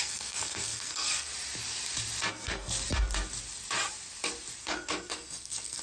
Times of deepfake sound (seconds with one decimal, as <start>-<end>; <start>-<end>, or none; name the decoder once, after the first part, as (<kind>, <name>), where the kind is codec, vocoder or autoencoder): 0.0-1.3 (codec, SNAC); 2.3-2.7; 4.6-5.8